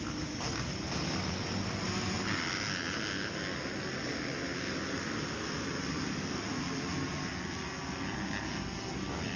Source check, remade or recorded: recorded